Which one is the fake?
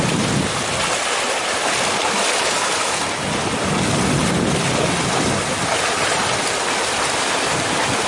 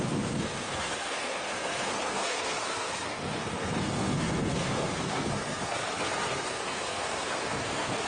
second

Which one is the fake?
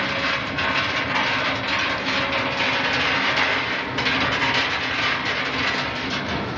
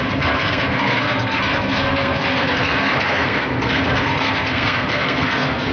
second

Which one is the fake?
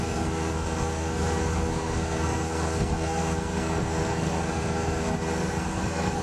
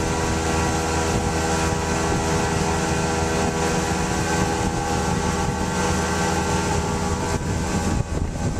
first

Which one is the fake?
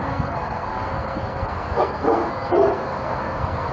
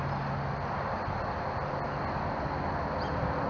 first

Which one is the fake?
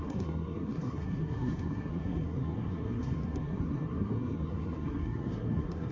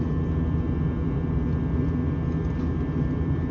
first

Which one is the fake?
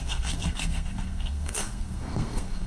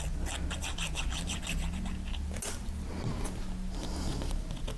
first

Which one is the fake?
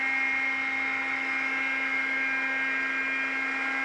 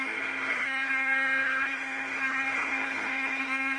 second